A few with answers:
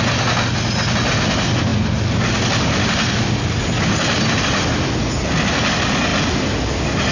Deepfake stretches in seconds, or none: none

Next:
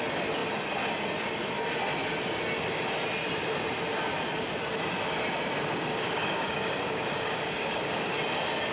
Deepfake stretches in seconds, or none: 5.9-8.1 (codec, DAC)

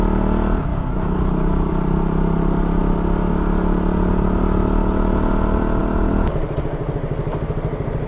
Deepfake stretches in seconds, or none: 0.7-1.7 (codec, DAC)

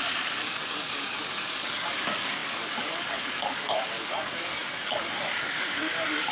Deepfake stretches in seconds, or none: 0.0-6.3 (codec, DAC)